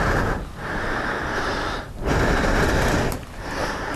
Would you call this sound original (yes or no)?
yes